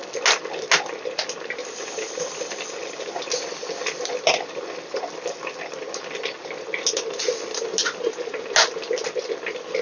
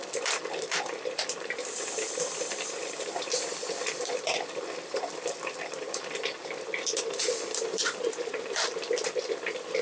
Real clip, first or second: first